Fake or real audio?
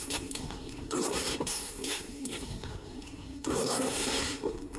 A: fake